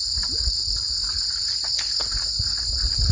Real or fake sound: real